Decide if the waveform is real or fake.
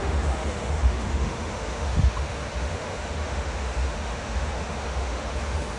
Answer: fake